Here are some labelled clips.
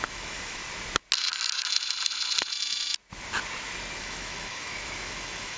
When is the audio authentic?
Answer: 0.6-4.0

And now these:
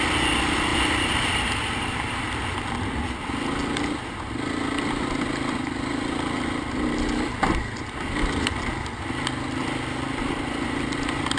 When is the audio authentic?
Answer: 0.0-11.4

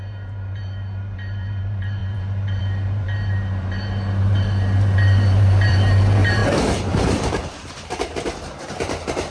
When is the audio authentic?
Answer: none

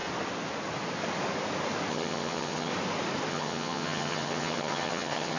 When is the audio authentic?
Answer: 0.0-1.9; 2.7-3.3